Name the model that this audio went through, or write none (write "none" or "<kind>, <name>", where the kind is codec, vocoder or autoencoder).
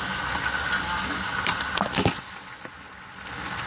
none